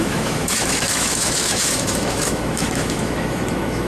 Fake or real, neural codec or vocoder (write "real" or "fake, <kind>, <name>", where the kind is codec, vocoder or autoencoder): fake, autoencoder, DAC-VAE